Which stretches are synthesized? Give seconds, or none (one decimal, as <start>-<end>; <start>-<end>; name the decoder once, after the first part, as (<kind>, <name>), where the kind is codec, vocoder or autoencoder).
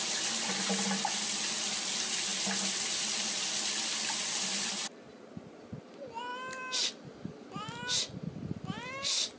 none